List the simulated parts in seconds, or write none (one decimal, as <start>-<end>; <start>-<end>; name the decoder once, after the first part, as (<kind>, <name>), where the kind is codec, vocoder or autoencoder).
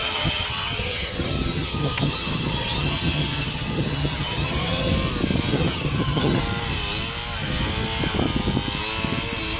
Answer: 0.0-4.9 (vocoder, HiFi-GAN); 5.5-6.4